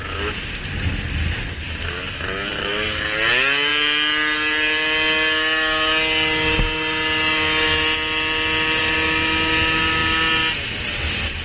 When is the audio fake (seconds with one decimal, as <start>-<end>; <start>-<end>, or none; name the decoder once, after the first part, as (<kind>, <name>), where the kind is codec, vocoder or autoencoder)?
2.5-3.0 (codec, DAC)